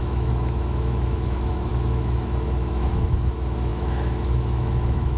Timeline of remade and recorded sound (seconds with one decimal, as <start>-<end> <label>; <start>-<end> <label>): 0.0-5.2 remade